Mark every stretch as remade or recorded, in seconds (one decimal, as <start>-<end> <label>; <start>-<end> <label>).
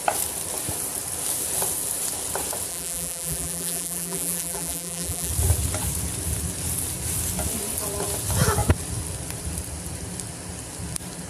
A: 0.0-2.7 recorded; 2.7-5.3 remade; 5.3-11.3 recorded